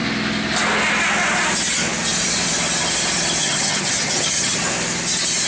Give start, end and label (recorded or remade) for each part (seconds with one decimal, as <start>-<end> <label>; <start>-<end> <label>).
0.0-3.4 recorded; 3.4-4.6 remade; 4.6-5.5 recorded